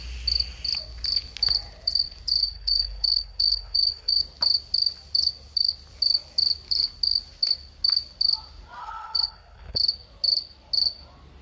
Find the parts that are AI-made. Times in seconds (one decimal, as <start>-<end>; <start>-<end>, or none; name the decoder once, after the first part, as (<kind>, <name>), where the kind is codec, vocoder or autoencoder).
2.4-4.2 (codec, HILCodec); 8.8-9.8